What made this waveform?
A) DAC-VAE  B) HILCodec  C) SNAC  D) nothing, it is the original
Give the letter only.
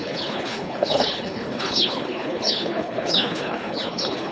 B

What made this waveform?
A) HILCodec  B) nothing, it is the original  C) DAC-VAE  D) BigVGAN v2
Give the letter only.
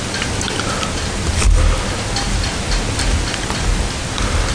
B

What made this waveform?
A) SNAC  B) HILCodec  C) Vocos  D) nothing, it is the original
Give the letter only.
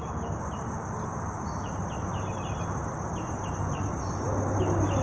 D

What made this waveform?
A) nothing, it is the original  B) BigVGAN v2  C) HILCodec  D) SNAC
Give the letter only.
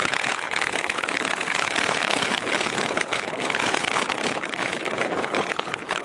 C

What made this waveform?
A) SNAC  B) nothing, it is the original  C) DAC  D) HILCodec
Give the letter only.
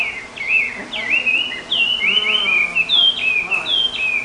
B